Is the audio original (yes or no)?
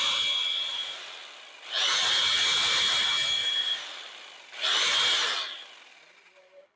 yes